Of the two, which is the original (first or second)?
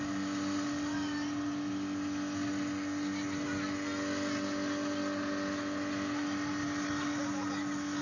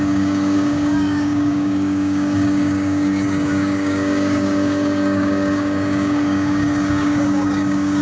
first